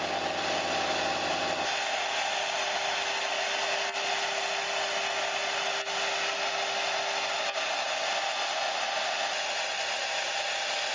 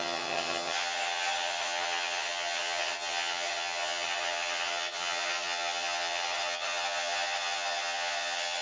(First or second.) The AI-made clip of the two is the second